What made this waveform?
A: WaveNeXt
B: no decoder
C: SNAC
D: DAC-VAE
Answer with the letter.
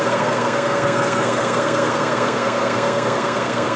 C